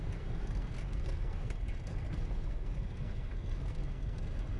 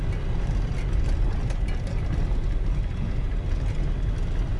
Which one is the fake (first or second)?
first